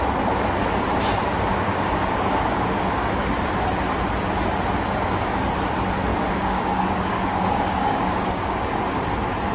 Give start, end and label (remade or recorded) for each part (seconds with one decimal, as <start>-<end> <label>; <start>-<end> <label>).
0.0-1.5 recorded; 1.5-3.4 remade; 3.4-6.1 recorded; 6.1-8.6 remade; 8.6-9.5 recorded